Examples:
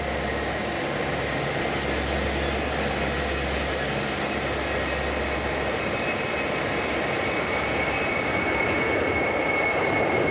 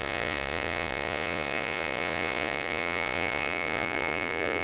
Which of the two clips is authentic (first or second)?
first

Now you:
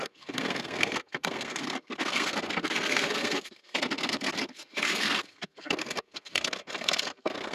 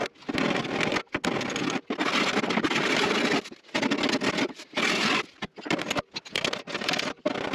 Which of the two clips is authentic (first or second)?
second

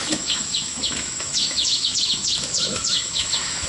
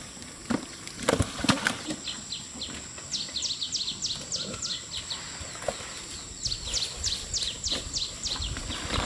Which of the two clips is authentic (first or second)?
second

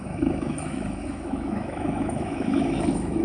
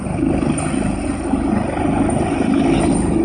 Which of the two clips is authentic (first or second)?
second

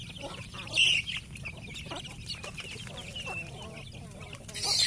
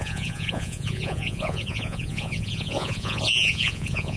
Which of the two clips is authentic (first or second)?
first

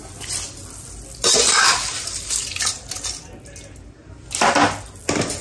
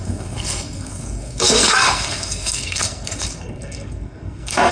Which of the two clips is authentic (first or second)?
first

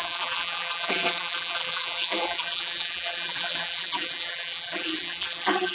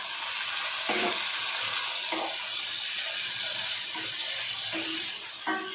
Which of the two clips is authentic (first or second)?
second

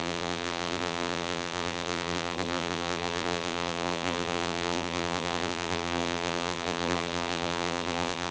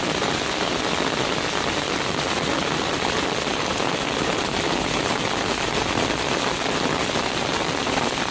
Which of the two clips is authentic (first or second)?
second